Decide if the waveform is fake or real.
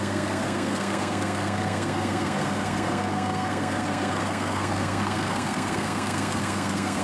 fake